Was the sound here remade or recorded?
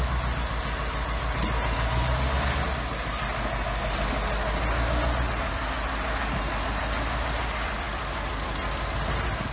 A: recorded